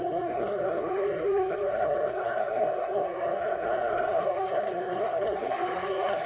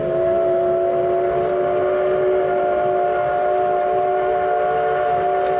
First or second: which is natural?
second